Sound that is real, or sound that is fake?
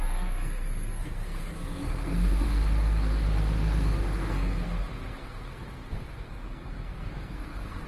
fake